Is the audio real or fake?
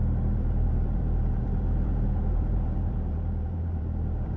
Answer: fake